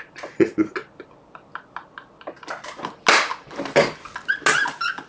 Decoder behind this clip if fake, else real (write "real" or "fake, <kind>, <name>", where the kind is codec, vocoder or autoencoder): real